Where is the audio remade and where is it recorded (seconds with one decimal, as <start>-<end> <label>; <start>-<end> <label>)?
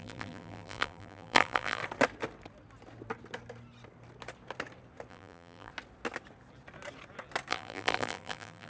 0.0-1.8 remade; 1.8-5.1 recorded; 5.1-5.7 remade; 5.7-7.5 recorded; 7.5-8.7 remade